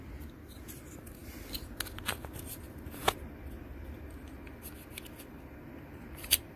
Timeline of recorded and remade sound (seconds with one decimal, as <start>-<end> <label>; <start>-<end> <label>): 0.0-6.6 recorded